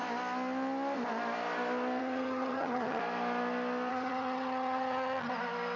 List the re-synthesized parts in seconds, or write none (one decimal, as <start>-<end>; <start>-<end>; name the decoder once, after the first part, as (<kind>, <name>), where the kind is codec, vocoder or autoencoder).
2.0-3.0 (vocoder, HiFi-GAN); 3.9-5.3